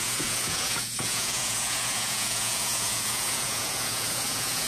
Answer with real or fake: fake